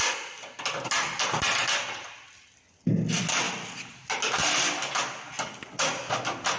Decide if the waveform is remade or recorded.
recorded